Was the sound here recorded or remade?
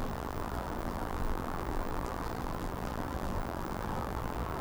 remade